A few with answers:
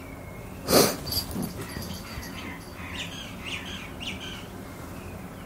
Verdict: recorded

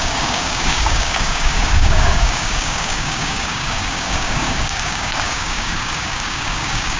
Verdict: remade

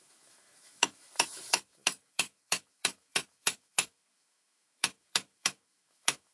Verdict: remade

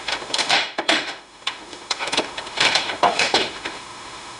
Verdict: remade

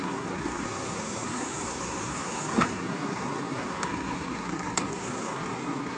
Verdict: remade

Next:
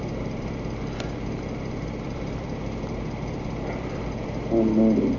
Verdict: remade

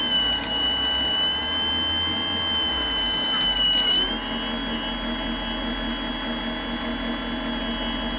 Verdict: recorded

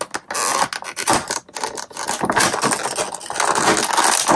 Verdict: recorded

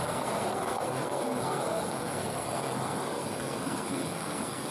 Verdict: remade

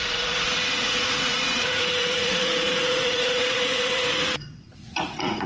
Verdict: remade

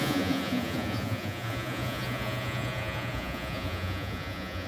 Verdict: remade